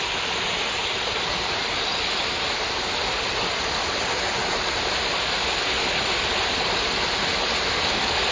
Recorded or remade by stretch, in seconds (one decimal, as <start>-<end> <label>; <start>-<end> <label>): 0.0-8.3 recorded